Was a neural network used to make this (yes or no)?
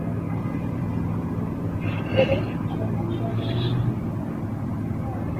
no